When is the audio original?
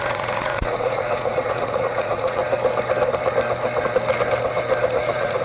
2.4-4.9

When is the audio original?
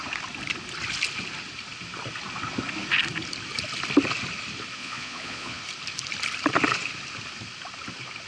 0.0-4.8; 5.6-8.3